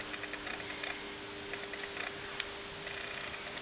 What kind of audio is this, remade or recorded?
recorded